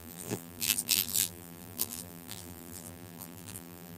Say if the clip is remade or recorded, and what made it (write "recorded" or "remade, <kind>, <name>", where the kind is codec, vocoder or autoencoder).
remade, vocoder, BigVGAN v2